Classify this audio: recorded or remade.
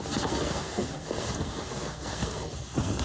remade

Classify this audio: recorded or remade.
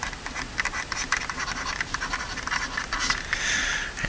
recorded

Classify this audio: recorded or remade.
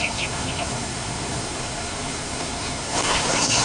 remade